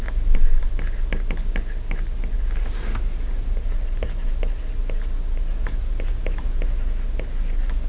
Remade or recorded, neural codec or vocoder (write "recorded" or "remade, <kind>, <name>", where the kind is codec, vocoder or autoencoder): recorded